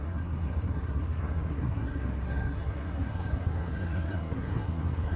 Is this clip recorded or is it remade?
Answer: remade